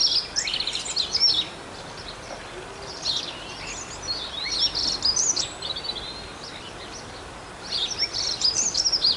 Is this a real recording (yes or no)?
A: yes